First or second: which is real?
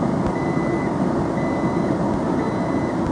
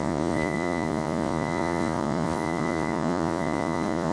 first